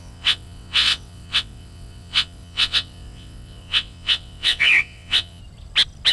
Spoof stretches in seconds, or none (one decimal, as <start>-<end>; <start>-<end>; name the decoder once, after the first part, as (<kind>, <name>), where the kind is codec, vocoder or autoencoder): 0.0-5.4 (vocoder, WaveNeXt)